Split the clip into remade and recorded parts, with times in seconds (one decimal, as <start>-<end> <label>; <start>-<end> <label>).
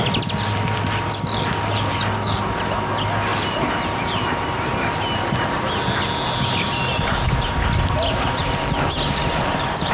0.0-9.9 recorded